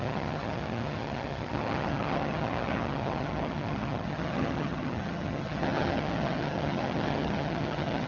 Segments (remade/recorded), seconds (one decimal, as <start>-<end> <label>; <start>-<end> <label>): 0.0-8.1 remade